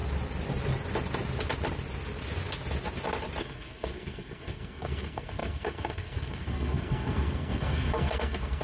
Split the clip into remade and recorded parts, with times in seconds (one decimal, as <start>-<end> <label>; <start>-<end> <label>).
0.0-3.4 recorded; 3.4-8.6 remade